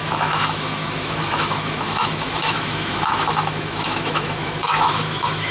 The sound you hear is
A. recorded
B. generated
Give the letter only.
B